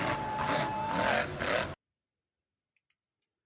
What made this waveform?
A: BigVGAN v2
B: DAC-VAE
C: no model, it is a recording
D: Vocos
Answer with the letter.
C